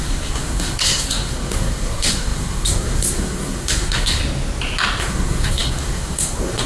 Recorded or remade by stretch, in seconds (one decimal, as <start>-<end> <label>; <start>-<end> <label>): 0.0-4.2 remade; 4.2-5.0 recorded; 5.0-6.7 remade